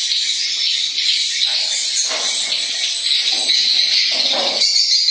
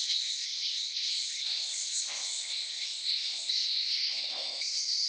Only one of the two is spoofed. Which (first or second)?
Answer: second